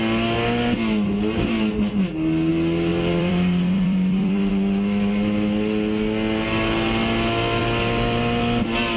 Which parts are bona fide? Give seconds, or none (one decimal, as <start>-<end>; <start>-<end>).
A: 0.0-2.9; 4.5-9.0